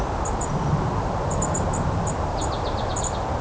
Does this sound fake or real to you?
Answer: real